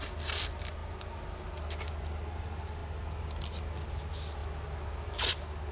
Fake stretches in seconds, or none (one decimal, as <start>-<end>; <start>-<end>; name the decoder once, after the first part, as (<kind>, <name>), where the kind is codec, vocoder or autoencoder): none